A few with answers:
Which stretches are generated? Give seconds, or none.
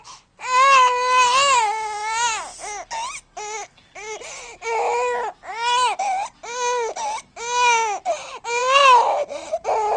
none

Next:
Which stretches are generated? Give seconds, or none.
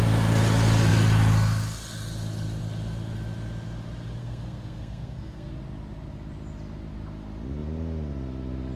4.2-5.5 (codec, SNAC)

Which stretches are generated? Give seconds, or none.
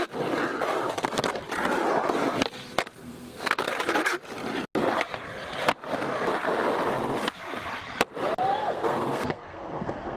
3.0-3.6 (codec, SNAC); 8.6-10.2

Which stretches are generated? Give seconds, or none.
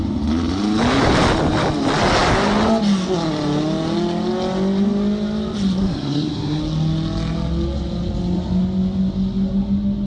5.8-6.6 (codec, SNAC)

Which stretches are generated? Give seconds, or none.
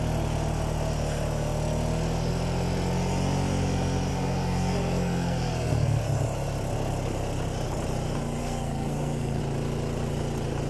4.1-6.0 (codec, SNAC); 8.4-9.4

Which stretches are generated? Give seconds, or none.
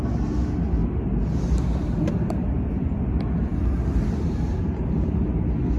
none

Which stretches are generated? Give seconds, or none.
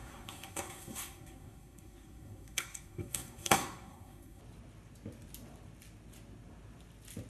0.0-4.4 (codec, SNAC)